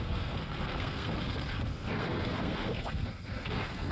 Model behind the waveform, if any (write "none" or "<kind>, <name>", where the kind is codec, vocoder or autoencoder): codec, SNAC